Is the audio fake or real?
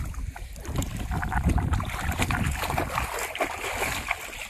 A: real